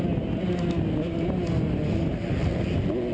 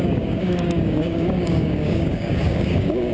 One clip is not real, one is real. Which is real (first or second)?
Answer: first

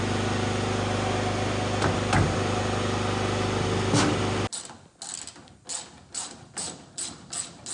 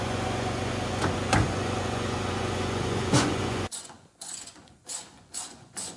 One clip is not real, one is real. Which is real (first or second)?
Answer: first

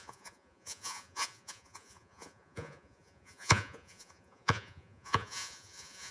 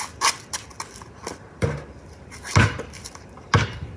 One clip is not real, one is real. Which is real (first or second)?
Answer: second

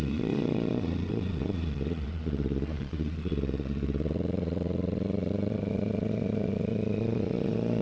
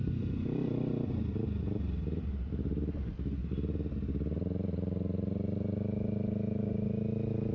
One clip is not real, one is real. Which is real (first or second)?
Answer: second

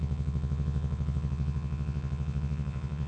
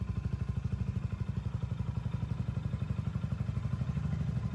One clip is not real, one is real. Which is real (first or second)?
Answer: second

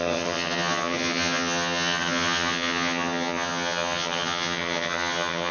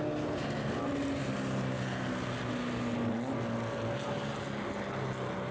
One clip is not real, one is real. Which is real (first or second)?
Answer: second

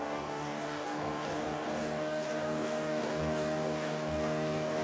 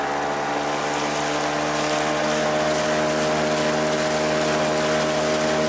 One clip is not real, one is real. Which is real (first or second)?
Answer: second